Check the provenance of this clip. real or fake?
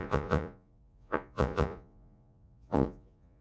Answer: fake